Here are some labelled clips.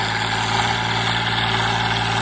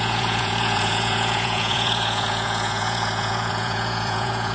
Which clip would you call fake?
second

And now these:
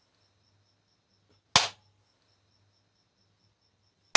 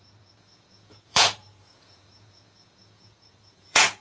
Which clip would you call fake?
second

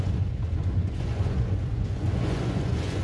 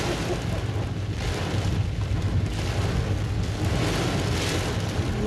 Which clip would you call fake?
first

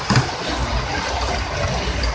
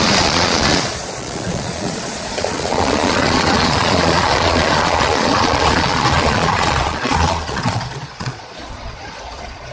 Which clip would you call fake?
second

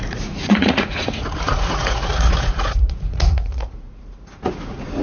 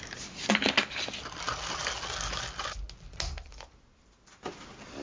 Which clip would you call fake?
first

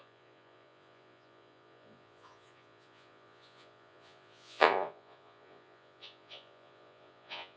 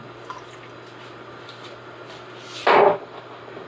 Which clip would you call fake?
first